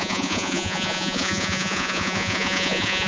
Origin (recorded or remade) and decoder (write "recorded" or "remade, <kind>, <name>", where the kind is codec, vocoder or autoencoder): remade, vocoder, Vocos